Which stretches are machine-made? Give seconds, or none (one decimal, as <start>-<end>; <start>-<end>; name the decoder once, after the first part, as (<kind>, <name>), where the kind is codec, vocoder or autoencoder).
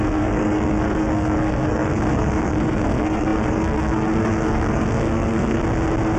0.0-5.6 (codec, SNAC)